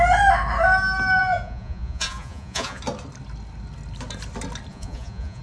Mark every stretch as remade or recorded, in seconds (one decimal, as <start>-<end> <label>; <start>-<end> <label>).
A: 0.0-1.2 recorded; 1.2-2.8 remade; 2.8-4.7 recorded; 4.7-5.4 remade